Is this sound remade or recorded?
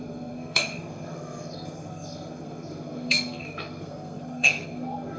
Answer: remade